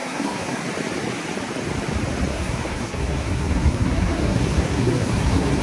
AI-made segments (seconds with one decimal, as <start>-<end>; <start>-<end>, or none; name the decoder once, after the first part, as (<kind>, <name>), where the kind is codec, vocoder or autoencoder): 0.0-0.6 (codec, SNAC); 2.3-5.6